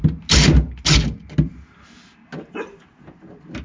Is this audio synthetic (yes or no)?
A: no